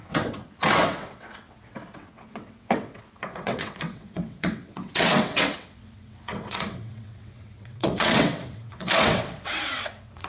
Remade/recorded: remade